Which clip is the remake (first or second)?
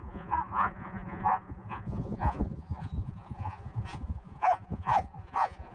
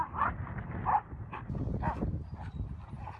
first